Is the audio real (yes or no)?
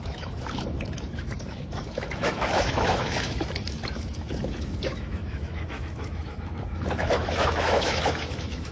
no